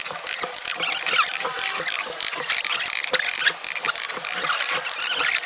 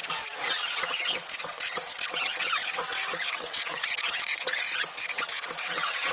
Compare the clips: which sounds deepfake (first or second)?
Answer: second